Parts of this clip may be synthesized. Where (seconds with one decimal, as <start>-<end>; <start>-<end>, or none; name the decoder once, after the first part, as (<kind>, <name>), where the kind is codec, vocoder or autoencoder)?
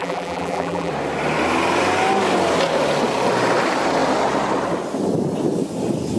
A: 0.0-0.9 (vocoder, BigVGAN v2)